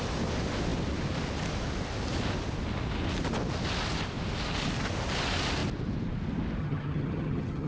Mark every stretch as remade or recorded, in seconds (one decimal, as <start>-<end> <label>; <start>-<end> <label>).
0.0-6.6 recorded; 6.6-7.7 remade